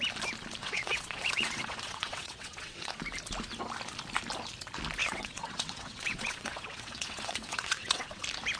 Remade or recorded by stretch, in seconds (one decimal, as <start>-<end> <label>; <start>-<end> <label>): 0.0-0.6 recorded; 0.6-3.0 remade; 3.0-5.0 recorded; 5.0-8.2 remade; 8.2-8.6 recorded